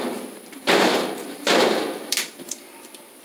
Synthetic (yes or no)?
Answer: yes